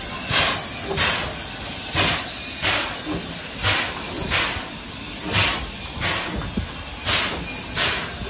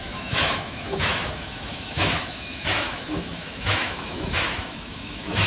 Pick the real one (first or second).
first